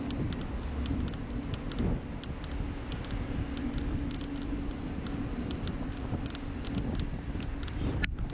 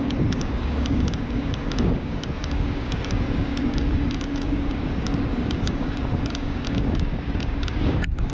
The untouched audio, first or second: first